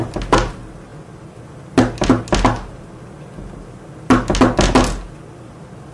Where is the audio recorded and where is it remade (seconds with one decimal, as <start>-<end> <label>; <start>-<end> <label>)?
0.0-5.9 recorded